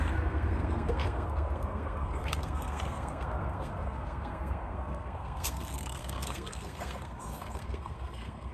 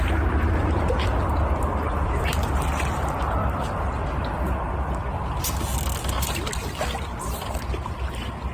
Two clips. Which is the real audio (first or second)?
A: second